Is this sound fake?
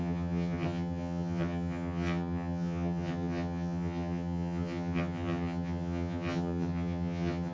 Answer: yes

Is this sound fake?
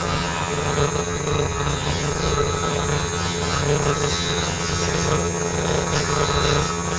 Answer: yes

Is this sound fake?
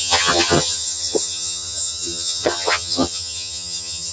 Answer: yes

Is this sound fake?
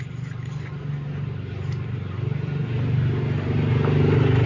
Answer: no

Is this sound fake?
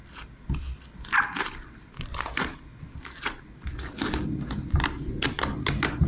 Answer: no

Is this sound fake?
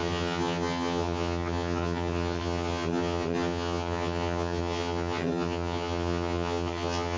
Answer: yes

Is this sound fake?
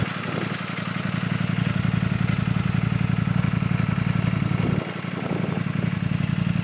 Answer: no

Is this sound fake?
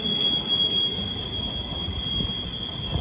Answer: no